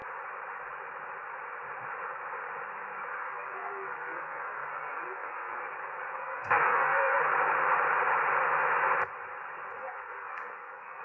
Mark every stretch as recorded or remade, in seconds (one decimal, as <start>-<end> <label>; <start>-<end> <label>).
0.0-3.2 recorded; 3.2-5.6 remade; 5.6-6.2 recorded; 6.2-7.2 remade; 7.2-9.8 recorded; 9.8-11.0 remade

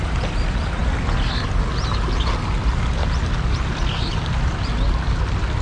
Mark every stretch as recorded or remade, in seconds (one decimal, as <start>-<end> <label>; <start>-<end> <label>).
0.0-5.6 recorded

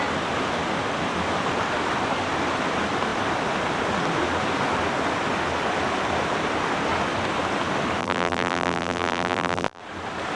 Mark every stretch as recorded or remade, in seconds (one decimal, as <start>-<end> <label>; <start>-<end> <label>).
0.0-8.0 recorded; 8.0-9.8 remade; 9.8-10.4 recorded

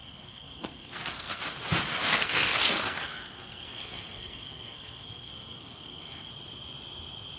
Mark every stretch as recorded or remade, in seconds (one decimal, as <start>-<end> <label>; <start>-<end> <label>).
0.0-1.4 remade; 1.4-1.9 recorded; 1.9-6.3 remade; 6.3-7.4 recorded

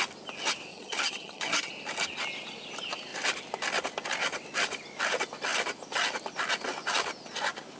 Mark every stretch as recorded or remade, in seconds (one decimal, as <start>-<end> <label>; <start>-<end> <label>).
0.0-0.7 recorded; 0.7-1.7 remade; 1.7-7.8 recorded

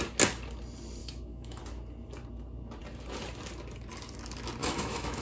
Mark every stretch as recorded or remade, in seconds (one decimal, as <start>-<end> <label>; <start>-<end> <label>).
0.0-1.0 recorded; 1.0-1.6 remade; 1.6-4.6 recorded; 4.6-5.2 remade

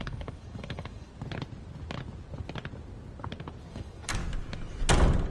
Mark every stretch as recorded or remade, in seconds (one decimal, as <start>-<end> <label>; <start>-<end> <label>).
0.0-1.1 remade; 1.1-3.7 recorded; 3.7-4.2 remade; 4.2-5.3 recorded